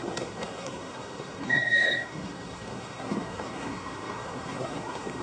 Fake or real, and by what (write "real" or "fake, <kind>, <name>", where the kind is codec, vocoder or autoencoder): fake, codec, SNAC